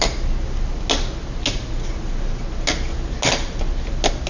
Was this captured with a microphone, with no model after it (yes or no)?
yes